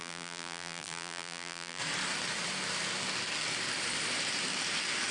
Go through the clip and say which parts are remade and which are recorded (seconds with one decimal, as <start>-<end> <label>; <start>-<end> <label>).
0.0-1.8 remade; 1.8-5.1 recorded